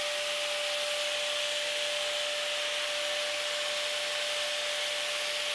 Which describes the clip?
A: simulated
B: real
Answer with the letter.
B